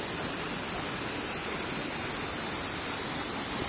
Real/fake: fake